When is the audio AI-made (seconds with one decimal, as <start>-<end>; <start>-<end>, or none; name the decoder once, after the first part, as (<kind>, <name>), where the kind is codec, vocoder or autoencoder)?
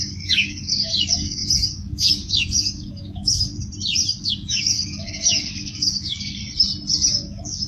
0.0-3.5 (codec, DAC); 4.2-6.4; 7.1-7.7